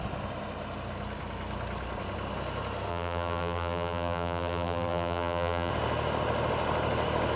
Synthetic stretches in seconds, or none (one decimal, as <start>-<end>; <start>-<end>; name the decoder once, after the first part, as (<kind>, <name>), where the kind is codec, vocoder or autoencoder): 2.9-5.7 (vocoder, BigVGAN v2)

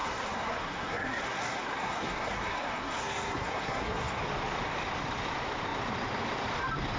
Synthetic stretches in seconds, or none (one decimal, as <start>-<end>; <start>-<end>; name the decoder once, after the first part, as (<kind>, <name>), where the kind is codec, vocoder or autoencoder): 0.0-4.2 (codec, SNAC)

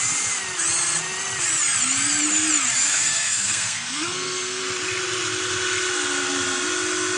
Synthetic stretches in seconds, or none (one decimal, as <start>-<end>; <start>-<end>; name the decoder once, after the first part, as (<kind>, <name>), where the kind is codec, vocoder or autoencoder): 2.9-4.6 (codec, SNAC)

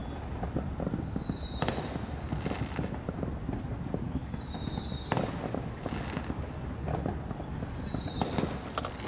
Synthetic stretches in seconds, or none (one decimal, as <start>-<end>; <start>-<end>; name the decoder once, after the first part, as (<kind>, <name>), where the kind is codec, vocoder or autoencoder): none

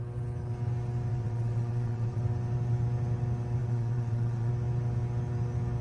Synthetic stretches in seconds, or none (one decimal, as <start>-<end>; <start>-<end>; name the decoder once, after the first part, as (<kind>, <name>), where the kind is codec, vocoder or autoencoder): 1.1-2.2 (vocoder, WaveNeXt); 3.6-4.5

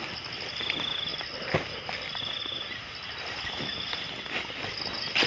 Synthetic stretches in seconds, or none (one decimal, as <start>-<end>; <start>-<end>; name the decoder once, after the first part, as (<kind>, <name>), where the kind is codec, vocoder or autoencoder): none